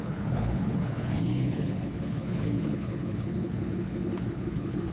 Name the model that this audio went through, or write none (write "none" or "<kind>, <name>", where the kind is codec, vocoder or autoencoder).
codec, HILCodec